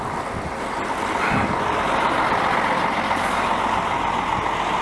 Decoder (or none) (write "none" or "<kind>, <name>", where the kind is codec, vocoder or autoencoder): none